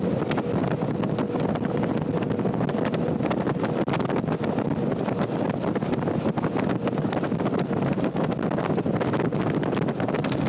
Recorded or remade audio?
recorded